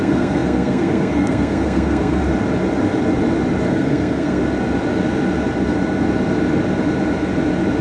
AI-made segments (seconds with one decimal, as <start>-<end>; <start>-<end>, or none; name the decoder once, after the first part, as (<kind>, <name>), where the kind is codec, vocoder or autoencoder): 0.0-2.2 (codec, SNAC); 3.7-4.4